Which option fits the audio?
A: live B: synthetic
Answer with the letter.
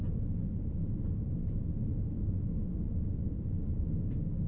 B